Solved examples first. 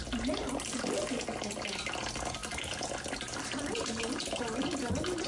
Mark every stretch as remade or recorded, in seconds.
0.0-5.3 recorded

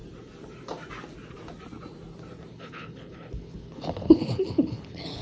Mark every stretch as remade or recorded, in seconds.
0.0-2.5 recorded; 2.5-5.2 remade

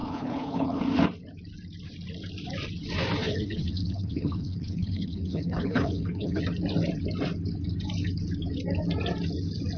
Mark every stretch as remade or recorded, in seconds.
0.0-0.8 remade; 0.8-3.2 recorded; 3.2-6.4 remade; 6.4-9.8 recorded